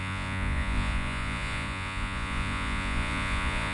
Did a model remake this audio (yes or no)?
yes